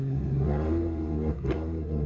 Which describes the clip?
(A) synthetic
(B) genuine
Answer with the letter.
A